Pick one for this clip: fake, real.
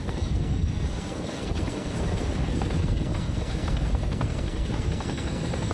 fake